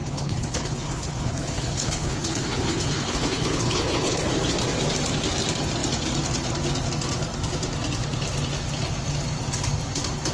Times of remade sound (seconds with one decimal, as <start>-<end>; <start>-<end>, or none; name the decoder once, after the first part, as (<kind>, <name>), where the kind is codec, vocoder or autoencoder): 0.0-4.3 (codec, HILCodec)

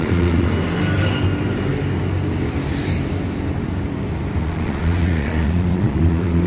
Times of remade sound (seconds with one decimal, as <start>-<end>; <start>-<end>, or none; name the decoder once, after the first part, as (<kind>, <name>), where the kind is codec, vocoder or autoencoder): 0.0-0.5 (vocoder, Vocos); 4.4-6.5

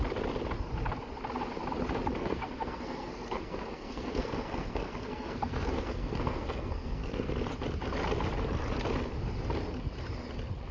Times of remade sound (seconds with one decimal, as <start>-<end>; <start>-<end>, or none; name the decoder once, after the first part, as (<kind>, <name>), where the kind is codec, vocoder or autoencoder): 2.2-7.3 (codec, SNAC)

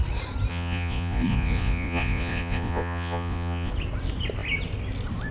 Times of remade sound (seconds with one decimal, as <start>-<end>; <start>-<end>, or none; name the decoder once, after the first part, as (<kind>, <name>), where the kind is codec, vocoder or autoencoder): 0.5-3.7 (vocoder, Vocos)

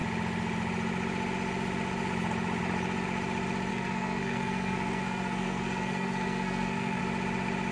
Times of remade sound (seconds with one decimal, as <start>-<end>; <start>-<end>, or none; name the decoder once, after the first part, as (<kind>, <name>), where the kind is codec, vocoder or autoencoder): 3.7-7.0 (codec, SNAC)